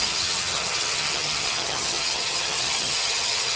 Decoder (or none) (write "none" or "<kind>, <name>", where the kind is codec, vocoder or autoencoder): vocoder, HiFi-GAN